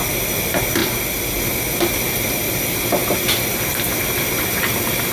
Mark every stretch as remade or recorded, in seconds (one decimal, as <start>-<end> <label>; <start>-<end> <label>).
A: 0.0-5.1 recorded